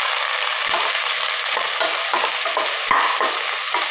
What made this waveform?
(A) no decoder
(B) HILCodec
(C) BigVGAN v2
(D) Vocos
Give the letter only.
A